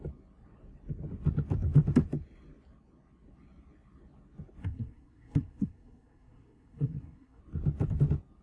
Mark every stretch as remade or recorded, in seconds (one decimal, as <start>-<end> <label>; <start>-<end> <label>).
0.0-4.6 recorded; 4.6-7.4 remade; 7.4-8.4 recorded

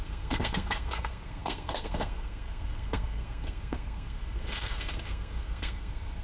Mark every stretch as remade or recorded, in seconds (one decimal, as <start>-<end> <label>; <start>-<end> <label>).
0.0-6.2 remade

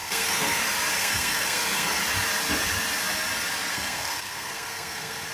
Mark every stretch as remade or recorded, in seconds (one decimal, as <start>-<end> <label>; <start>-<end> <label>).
0.0-0.6 remade; 0.6-1.0 recorded; 1.0-2.0 remade; 2.0-3.7 recorded; 3.7-5.3 remade

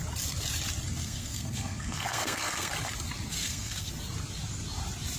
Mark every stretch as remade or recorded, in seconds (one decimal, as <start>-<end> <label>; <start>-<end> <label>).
0.0-1.0 recorded; 1.0-2.7 remade; 2.7-3.4 recorded; 3.4-3.9 remade; 3.9-5.2 recorded

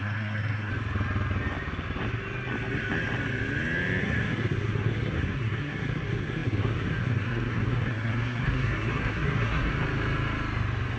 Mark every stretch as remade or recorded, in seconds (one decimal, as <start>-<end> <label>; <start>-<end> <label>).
0.0-0.7 remade; 0.7-4.0 recorded; 4.0-9.7 remade; 9.7-11.0 recorded

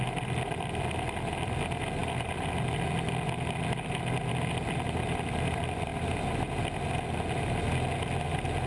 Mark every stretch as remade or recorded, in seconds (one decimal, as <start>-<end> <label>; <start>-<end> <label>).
0.0-8.7 recorded

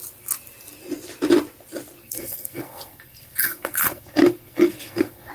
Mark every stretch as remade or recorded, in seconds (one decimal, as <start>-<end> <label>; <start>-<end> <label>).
0.0-2.0 recorded; 2.0-5.3 remade

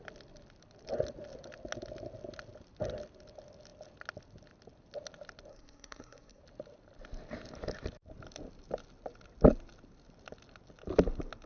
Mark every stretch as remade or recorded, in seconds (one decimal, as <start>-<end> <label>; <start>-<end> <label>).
0.0-5.5 recorded; 5.5-6.4 remade; 6.4-11.5 recorded